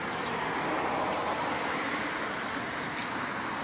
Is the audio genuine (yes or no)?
yes